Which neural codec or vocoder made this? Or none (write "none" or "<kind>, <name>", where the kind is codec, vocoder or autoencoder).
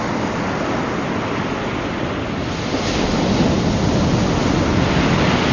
none